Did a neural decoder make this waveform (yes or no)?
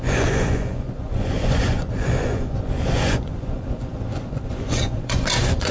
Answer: yes